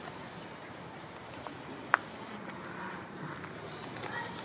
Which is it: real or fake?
real